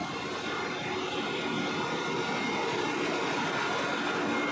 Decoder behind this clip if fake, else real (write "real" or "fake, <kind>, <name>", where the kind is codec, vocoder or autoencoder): real